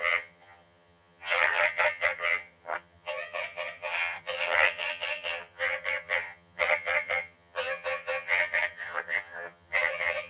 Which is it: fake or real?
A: fake